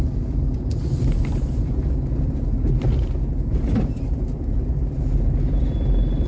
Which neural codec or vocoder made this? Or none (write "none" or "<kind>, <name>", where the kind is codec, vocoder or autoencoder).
none